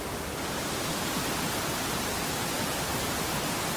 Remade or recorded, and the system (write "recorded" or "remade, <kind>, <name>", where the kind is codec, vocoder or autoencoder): remade, vocoder, BigVGAN v2